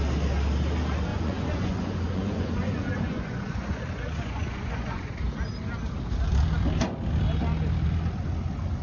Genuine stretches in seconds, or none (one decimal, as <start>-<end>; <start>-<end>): 0.0-1.1; 5.1-8.8